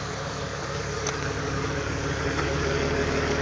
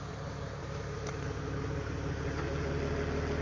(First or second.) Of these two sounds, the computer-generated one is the first